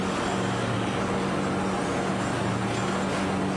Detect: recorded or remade recorded